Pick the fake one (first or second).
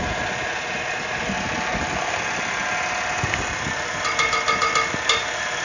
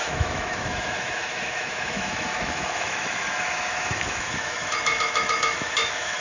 second